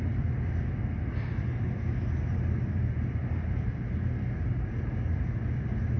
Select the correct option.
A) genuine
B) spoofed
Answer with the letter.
A